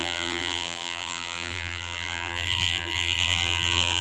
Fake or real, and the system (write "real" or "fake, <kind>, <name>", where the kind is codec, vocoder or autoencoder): fake, vocoder, BigVGAN v2